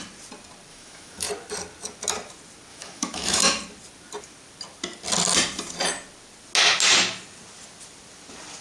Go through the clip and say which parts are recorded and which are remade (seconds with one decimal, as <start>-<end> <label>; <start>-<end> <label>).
0.0-0.7 recorded; 0.7-1.3 remade; 1.3-2.7 recorded; 2.7-3.4 remade; 3.4-8.6 recorded